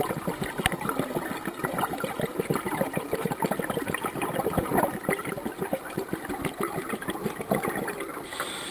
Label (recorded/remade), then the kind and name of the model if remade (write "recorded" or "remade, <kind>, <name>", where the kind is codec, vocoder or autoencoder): recorded